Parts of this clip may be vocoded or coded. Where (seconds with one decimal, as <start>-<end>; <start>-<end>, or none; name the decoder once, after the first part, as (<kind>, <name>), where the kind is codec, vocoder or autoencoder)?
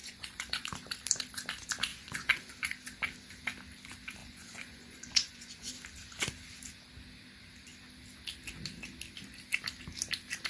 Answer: 0.0-0.7 (vocoder, Vocos); 1.9-2.5; 4.2-5.7